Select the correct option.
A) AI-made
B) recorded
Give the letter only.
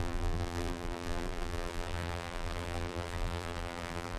A